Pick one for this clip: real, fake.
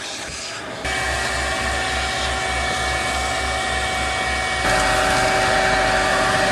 real